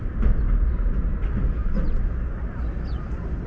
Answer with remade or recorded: recorded